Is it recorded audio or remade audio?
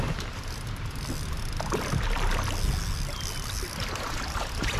recorded